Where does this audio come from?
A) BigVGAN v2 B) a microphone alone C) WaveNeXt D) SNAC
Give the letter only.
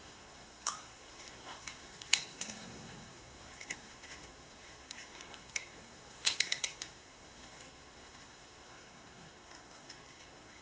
D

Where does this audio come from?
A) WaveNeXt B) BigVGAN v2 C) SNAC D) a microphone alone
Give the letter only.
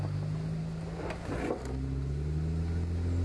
D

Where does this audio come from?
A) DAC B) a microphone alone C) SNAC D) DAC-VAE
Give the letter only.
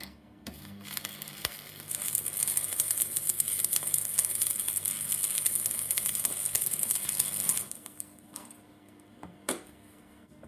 C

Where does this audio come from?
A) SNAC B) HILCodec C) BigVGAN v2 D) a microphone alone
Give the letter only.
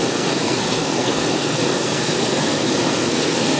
A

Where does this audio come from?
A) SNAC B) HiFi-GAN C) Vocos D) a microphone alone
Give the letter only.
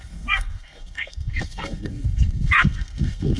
A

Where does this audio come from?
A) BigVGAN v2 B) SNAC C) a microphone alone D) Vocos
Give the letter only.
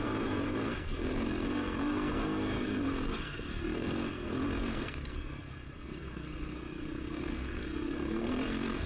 B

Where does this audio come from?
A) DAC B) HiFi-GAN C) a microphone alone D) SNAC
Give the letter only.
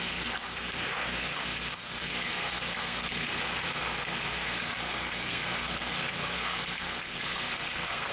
D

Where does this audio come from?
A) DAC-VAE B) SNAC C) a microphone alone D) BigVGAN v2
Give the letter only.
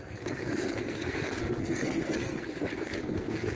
B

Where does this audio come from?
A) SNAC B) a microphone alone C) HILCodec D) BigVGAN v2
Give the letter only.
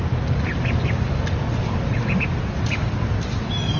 B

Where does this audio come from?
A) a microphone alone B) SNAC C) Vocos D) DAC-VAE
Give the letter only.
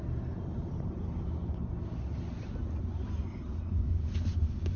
A